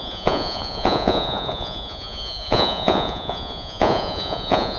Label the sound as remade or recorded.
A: remade